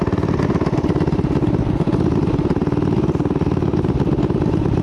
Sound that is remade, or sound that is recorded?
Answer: recorded